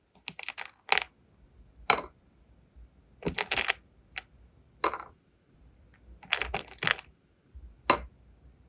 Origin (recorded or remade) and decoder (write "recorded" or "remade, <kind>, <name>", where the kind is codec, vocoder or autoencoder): recorded